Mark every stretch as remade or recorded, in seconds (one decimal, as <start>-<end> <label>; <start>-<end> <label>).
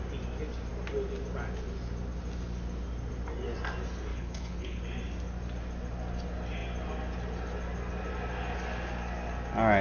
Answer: 0.0-4.1 recorded; 4.1-4.8 remade; 4.8-9.8 recorded